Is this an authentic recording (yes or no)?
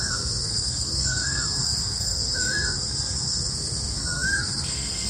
no